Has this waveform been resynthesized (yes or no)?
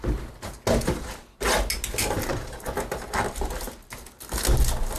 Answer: no